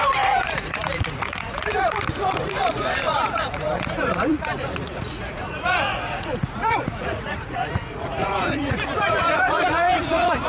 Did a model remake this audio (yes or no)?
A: yes